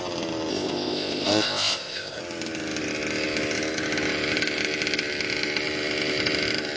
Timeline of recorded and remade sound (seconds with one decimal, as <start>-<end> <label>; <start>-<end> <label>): 0.0-0.5 recorded; 0.5-2.2 remade; 2.2-6.8 recorded